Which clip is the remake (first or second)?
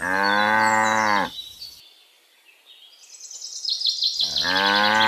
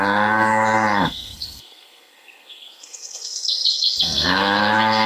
second